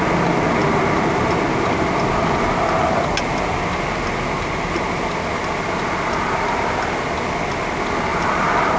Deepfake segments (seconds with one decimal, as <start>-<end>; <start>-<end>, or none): 8.1-8.8

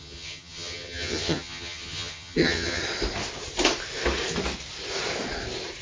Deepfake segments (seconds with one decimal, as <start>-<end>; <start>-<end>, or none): 0.0-2.8

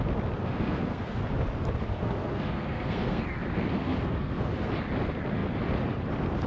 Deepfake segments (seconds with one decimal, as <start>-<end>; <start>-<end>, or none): 0.4-1.2; 1.9-3.2; 3.7-4.7

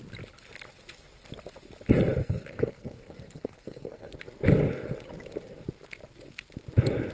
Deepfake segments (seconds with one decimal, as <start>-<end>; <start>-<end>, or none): 2.2-4.1